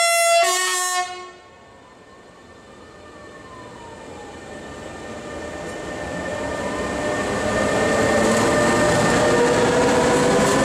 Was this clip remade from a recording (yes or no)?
no